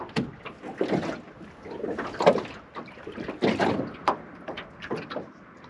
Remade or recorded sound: recorded